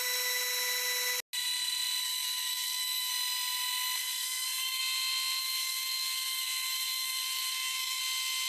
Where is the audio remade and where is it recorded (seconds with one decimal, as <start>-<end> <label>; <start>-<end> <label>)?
0.0-2.0 recorded; 2.0-3.1 remade; 3.1-4.0 recorded; 4.0-4.8 remade; 4.8-5.4 recorded; 5.4-8.0 remade; 8.0-8.5 recorded